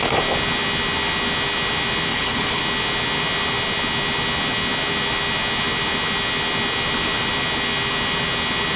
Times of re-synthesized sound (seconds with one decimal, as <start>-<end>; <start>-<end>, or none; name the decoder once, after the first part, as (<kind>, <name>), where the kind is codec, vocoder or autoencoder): 2.1-2.6 (codec, HILCodec)